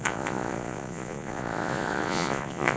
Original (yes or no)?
no